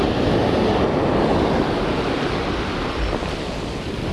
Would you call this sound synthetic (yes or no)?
no